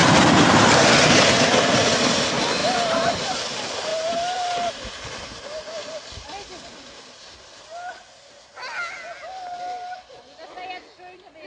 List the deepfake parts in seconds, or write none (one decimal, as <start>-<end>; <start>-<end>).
2.6-3.2; 3.9-4.8